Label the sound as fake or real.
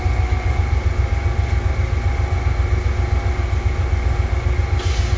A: real